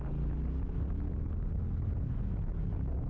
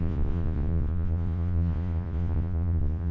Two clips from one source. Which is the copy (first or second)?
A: second